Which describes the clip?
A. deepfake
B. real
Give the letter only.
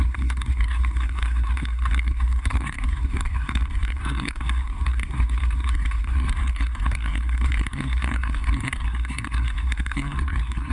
A